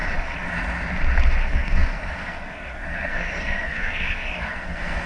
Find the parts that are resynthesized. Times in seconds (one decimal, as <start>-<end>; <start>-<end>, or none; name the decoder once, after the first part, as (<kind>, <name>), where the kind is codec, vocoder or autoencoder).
1.4-5.1 (codec, SNAC)